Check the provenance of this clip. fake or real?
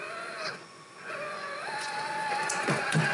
fake